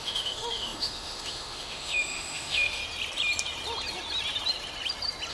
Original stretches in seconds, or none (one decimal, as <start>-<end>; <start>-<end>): 2.8-5.3